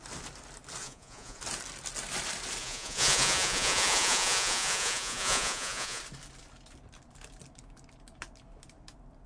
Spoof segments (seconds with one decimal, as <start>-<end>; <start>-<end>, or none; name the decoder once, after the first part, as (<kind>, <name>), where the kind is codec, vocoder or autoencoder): 0.8-1.4 (vocoder, Vocos); 2.6-6.0